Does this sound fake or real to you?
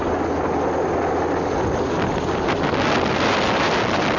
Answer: real